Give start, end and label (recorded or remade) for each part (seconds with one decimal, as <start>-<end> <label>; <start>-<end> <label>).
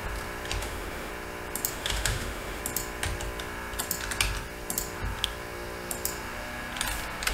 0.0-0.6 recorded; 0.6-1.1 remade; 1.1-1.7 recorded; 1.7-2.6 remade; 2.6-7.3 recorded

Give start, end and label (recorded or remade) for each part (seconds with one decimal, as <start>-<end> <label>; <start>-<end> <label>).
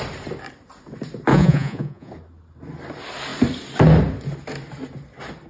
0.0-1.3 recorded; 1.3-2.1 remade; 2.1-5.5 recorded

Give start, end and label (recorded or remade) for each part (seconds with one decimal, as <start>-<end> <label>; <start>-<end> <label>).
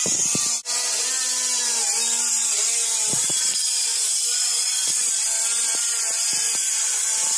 0.0-7.4 recorded